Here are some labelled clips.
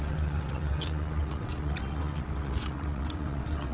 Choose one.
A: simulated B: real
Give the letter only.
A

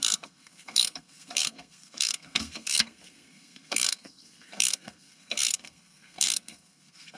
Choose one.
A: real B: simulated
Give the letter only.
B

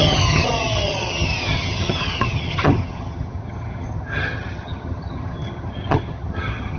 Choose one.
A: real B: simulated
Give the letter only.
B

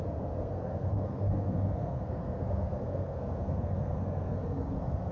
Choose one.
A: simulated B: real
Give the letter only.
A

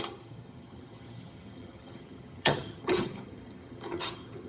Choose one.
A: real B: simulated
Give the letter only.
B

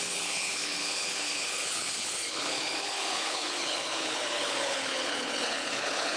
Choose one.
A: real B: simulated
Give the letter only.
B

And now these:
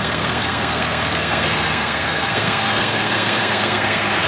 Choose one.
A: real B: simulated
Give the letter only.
B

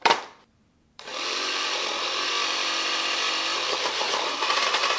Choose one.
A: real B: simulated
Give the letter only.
B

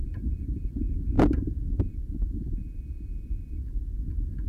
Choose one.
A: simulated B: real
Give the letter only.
B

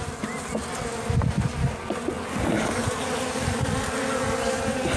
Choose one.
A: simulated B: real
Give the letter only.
B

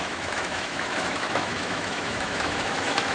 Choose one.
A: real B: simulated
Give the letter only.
B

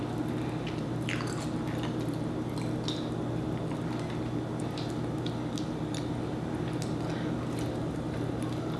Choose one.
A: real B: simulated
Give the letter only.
A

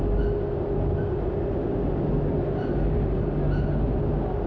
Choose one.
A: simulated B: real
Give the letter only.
B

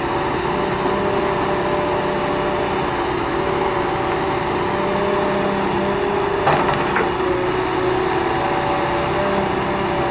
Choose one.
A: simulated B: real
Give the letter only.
B